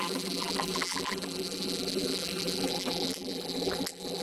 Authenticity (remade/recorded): remade